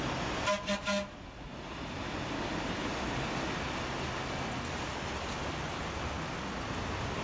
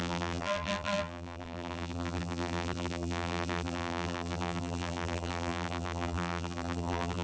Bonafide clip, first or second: first